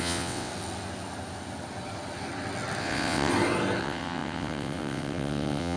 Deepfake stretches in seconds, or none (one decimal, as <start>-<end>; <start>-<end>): 0.0-0.5; 2.8-3.3; 3.8-5.8